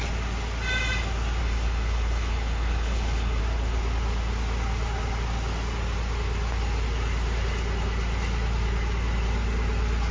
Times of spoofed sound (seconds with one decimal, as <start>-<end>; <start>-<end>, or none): 1.4-3.4